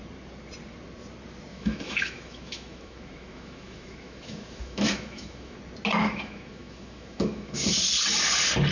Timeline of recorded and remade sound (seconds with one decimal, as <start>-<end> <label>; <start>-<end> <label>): 0.0-1.5 recorded; 1.5-5.6 remade; 5.6-6.0 recorded; 6.0-7.6 remade; 7.6-8.7 recorded